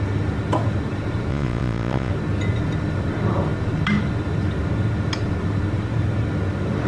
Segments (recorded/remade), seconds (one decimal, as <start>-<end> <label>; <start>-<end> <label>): 0.0-1.3 recorded; 1.3-2.1 remade; 2.1-6.9 recorded